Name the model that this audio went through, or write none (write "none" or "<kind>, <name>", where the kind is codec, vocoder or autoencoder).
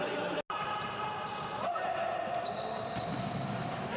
none